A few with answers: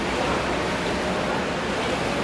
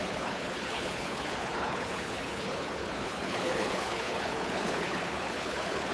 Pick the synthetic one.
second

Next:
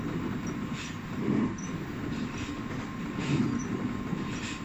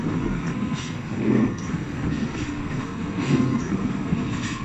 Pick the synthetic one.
second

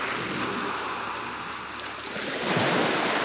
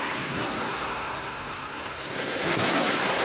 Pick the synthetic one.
second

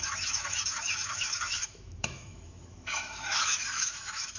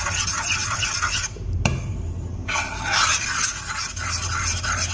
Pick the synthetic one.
first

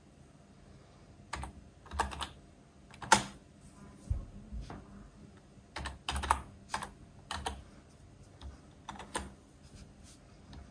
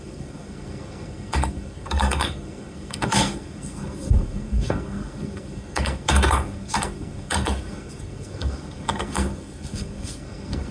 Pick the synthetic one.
second